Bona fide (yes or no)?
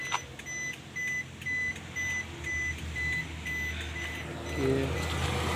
yes